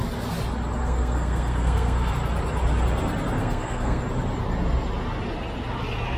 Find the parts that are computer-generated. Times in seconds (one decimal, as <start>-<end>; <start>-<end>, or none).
0.8-2.1; 3.4-4.0